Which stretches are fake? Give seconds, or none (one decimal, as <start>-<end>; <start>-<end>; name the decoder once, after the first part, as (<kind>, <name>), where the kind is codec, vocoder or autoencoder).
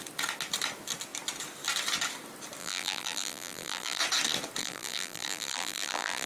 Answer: 2.6-4.0 (vocoder, BigVGAN v2); 4.6-6.3